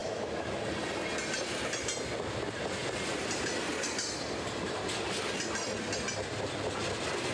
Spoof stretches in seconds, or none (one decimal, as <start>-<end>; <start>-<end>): 0.0-0.6